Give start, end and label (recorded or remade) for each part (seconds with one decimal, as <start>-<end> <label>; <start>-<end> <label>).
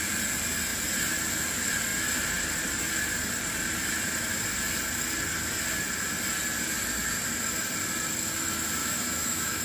0.0-8.8 recorded; 8.8-9.6 remade